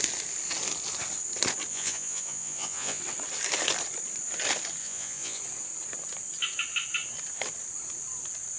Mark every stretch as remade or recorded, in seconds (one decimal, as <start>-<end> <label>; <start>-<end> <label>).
0.0-1.7 recorded; 1.7-3.0 remade; 3.0-4.8 recorded; 4.8-5.4 remade; 5.4-8.6 recorded